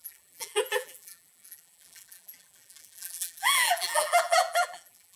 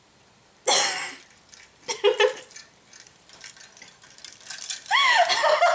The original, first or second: second